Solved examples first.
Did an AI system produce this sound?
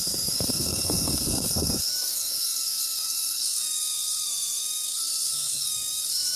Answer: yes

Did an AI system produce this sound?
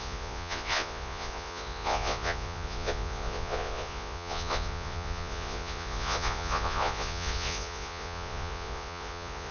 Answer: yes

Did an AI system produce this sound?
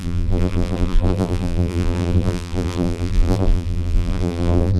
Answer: yes